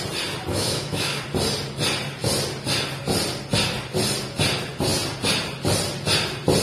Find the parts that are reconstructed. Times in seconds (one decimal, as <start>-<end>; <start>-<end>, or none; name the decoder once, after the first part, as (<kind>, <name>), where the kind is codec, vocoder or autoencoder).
0.5-1.2 (autoencoder, DAC-VAE)